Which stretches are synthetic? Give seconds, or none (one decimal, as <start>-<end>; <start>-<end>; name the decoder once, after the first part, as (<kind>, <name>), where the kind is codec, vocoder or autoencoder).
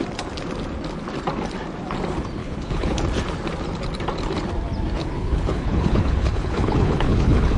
2.4-3.0 (codec, HILCodec); 5.0-7.6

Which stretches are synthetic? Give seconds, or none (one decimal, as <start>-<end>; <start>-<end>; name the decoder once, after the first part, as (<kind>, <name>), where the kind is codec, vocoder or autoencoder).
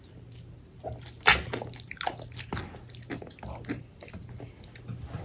none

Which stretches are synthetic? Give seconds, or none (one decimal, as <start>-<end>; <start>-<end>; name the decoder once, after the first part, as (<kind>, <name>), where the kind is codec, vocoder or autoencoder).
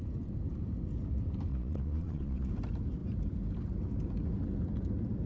1.5-2.5 (vocoder, Vocos)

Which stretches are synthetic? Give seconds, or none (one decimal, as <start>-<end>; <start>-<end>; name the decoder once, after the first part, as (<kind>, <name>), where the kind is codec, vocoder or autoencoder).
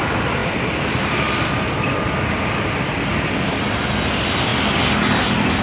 none